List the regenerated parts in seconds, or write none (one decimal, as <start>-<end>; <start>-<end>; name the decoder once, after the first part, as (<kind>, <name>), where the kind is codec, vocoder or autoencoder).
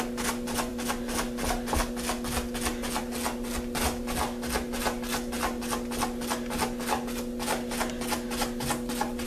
none